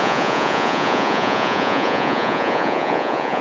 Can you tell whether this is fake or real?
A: fake